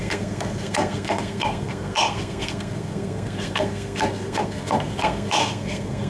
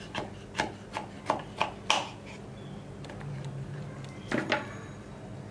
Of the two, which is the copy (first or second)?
first